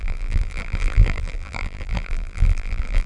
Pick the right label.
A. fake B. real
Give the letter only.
A